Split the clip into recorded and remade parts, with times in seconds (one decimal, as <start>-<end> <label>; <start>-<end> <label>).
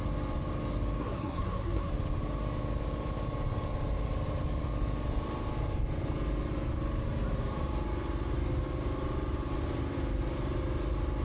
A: 0.0-1.0 recorded; 1.0-1.9 remade; 1.9-11.2 recorded